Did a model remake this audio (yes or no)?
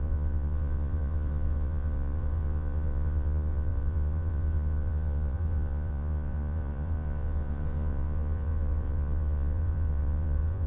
yes